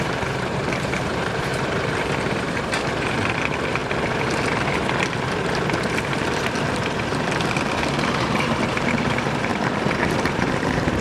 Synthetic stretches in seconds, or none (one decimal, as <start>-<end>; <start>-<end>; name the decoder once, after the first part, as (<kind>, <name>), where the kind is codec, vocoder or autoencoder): 0.0-3.8 (vocoder, BigVGAN v2); 8.1-9.5; 10.1-11.0